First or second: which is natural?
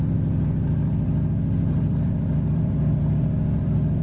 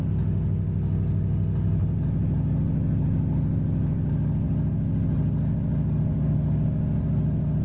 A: second